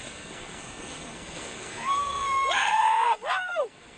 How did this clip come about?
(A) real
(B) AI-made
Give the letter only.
B